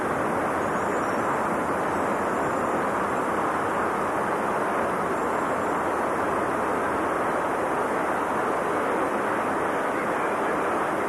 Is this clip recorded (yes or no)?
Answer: yes